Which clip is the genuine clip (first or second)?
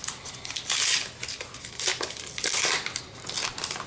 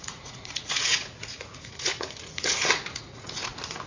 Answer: first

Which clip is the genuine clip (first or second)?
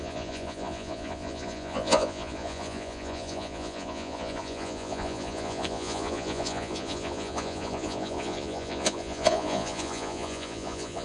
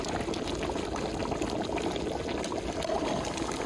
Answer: second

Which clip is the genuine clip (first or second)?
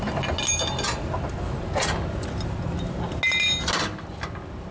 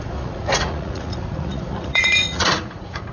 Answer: first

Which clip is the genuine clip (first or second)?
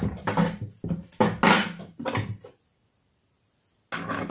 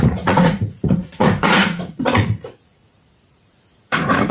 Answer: first